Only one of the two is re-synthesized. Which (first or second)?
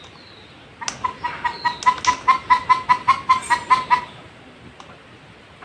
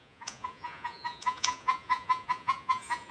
second